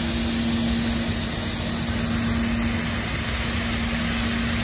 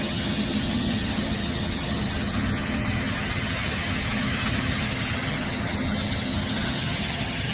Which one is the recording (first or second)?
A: first